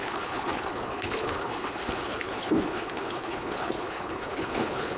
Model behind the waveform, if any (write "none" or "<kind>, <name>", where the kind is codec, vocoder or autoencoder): codec, HILCodec